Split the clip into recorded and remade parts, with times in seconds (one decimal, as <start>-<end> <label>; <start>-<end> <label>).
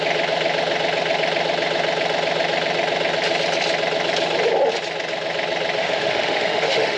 0.0-5.8 recorded; 5.8-7.0 remade